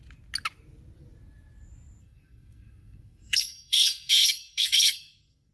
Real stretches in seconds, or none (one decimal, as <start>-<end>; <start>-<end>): 0.0-2.0